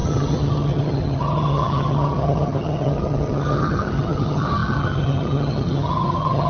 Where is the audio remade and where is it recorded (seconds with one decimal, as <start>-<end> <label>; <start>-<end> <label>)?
0.0-6.5 remade